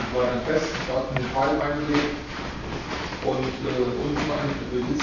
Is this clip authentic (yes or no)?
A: yes